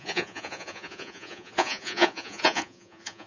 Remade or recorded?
remade